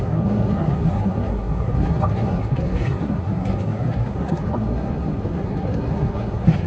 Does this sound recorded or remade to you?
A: remade